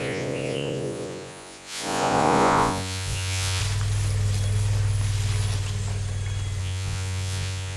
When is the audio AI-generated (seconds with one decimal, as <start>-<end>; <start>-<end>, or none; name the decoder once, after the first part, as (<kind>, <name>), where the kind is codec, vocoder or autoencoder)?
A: 0.0-3.6 (vocoder, Vocos); 6.6-7.8